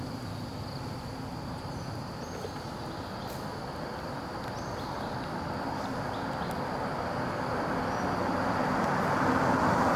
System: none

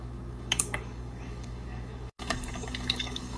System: codec, DAC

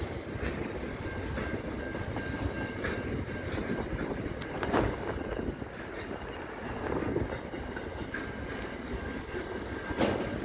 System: none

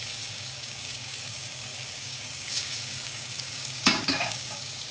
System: codec, DAC